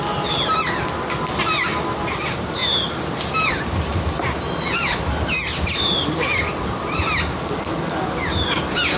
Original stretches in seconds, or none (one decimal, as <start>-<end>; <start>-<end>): 0.0-9.0